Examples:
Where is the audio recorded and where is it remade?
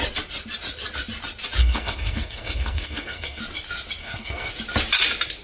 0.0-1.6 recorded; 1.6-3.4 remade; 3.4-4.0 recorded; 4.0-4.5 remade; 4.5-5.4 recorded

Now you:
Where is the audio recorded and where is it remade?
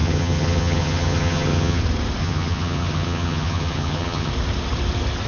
0.0-1.8 remade; 1.8-2.2 recorded; 2.2-4.3 remade; 4.3-5.3 recorded